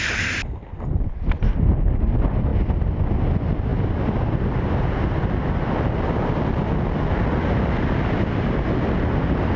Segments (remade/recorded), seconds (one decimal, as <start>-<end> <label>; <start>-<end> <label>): 0.0-9.6 recorded